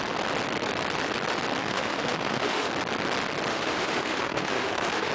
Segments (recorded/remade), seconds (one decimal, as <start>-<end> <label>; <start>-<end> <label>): 0.0-1.6 recorded; 1.6-2.7 remade; 2.7-3.5 recorded; 3.5-5.1 remade